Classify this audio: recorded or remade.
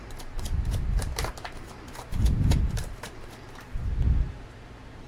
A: remade